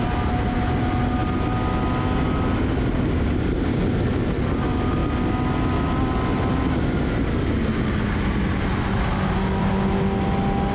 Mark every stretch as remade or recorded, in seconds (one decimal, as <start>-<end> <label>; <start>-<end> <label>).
0.0-10.7 recorded